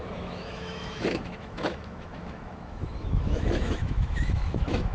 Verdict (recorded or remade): remade